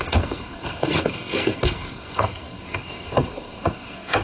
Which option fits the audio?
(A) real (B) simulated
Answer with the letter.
B